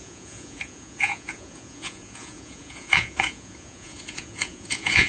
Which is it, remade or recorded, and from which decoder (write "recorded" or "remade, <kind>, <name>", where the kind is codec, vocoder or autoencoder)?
remade, vocoder, Vocos